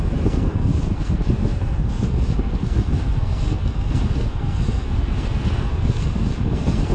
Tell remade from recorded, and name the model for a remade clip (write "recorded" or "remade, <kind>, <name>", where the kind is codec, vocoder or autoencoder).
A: remade, codec, SNAC